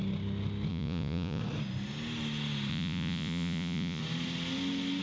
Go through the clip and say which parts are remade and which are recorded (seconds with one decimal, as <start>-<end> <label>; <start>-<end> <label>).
0.0-0.7 recorded; 0.7-1.4 remade; 1.4-2.7 recorded; 2.7-4.0 remade; 4.0-5.0 recorded